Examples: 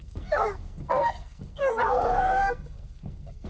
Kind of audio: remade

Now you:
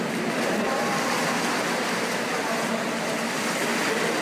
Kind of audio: recorded